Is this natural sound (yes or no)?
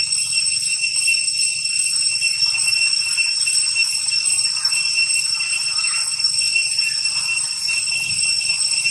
yes